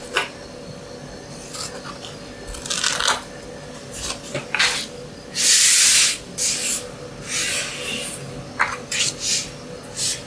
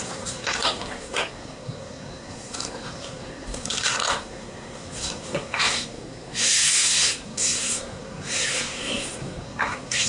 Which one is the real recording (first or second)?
first